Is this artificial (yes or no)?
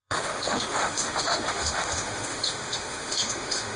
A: yes